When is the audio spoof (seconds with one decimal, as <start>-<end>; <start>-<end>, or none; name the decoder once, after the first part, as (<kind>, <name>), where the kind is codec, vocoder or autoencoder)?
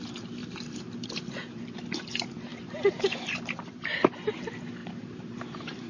0.4-1.6 (vocoder, BigVGAN v2); 2.5-4.1; 4.8-5.9